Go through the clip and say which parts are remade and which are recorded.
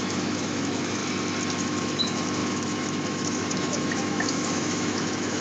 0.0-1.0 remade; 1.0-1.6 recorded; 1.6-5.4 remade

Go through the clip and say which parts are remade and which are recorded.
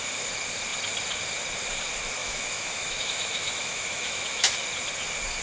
0.0-2.2 recorded; 2.2-4.5 remade; 4.5-5.4 recorded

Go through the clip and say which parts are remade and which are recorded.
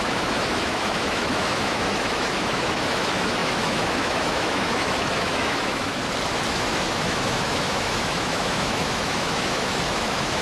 0.0-6.0 remade; 6.0-6.5 recorded; 6.5-10.4 remade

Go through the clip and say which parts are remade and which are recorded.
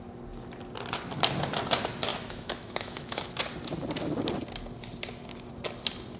0.0-2.1 recorded; 2.1-3.3 remade; 3.3-6.2 recorded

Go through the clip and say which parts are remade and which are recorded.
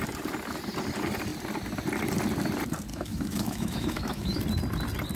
0.0-2.9 recorded; 2.9-4.4 remade; 4.4-5.2 recorded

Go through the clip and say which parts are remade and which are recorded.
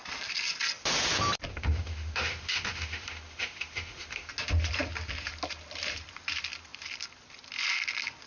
0.0-1.5 recorded; 1.5-4.3 remade; 4.3-8.3 recorded